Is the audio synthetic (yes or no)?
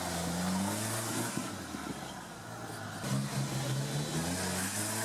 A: no